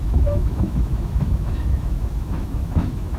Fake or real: fake